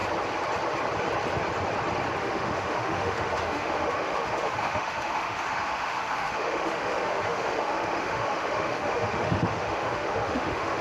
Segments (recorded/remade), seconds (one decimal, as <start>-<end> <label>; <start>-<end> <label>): 0.0-2.2 recorded; 2.2-10.8 remade